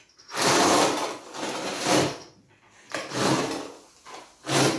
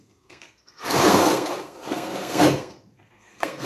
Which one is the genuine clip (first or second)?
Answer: first